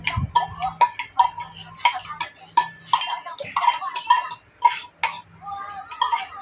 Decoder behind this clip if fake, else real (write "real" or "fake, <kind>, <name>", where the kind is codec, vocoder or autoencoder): real